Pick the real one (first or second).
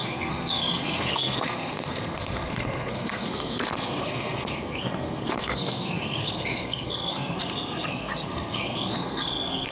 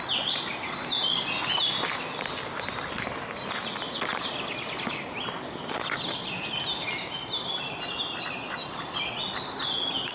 second